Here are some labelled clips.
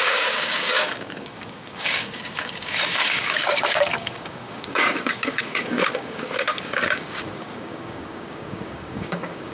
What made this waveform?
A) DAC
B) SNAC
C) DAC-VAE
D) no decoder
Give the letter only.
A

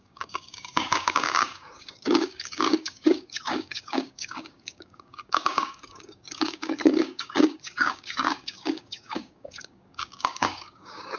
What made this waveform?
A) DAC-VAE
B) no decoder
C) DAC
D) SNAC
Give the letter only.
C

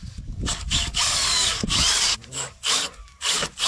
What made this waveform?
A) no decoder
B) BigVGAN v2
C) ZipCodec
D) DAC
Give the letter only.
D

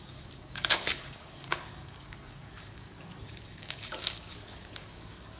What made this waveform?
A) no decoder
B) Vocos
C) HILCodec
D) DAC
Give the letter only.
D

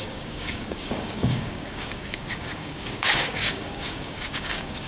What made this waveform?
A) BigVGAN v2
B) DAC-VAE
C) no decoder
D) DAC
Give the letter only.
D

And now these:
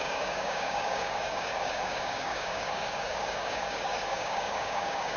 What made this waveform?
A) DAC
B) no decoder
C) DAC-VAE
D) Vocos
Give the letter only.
A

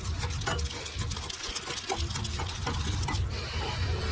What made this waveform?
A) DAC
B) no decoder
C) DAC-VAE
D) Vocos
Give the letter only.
B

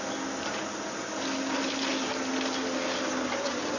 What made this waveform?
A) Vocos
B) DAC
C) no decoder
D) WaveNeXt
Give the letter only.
C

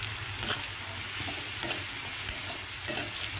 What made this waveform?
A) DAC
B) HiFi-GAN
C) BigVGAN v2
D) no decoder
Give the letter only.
D